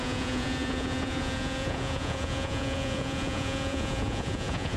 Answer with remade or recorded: remade